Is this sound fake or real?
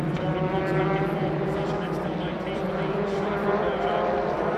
fake